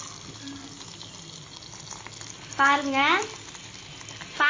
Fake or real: real